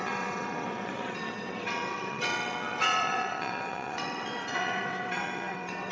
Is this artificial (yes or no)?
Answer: yes